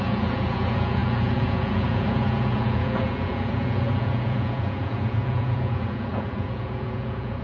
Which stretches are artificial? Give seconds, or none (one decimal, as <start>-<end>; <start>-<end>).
0.0-7.4